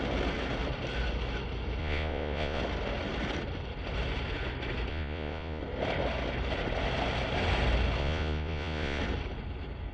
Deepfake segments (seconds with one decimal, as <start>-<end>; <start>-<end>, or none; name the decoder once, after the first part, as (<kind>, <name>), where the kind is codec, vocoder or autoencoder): 1.8-2.6 (vocoder, Vocos); 4.9-5.6; 8.0-9.0